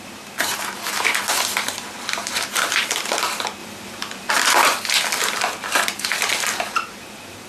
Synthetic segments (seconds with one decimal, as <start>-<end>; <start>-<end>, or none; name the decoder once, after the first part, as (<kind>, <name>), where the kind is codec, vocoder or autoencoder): 0.0-1.1 (vocoder, BigVGAN v2); 2.2-4.7; 6.3-7.5